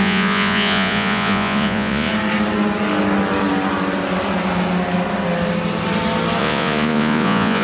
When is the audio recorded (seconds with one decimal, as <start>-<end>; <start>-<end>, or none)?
2.1-6.4